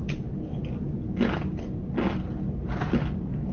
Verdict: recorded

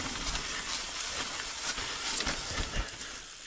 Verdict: recorded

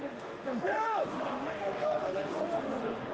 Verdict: remade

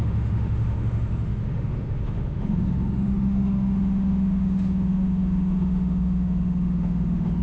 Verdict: remade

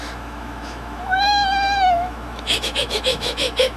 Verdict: remade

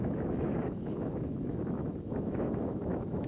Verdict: remade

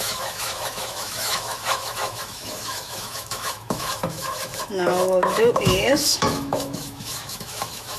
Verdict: remade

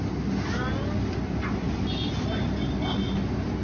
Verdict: recorded